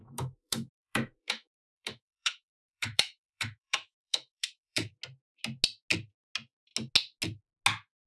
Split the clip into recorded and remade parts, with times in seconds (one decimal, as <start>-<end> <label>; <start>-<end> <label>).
0.0-4.9 remade; 4.9-8.1 recorded